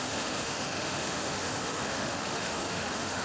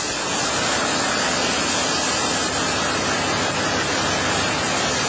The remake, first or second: first